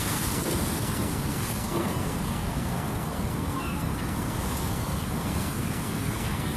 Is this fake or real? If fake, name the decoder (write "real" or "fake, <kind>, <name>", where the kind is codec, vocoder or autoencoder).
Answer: fake, codec, SNAC